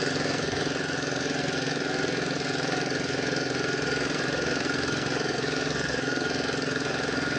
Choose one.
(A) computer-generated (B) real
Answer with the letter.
A